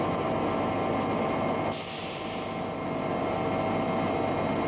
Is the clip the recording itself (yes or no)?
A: yes